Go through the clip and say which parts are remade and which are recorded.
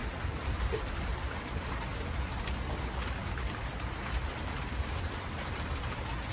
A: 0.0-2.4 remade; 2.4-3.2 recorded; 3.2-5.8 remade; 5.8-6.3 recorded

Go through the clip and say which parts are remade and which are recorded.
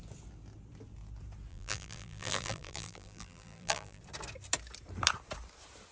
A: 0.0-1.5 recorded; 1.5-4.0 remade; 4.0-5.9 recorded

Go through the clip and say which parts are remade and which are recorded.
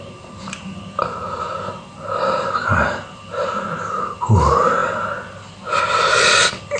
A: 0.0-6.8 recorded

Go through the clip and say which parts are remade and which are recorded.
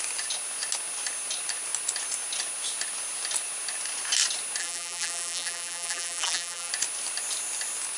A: 0.0-4.6 recorded; 4.6-6.7 remade; 6.7-8.0 recorded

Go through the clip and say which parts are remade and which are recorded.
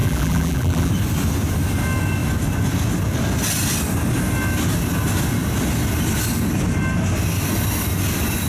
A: 0.0-0.9 remade; 0.9-8.5 recorded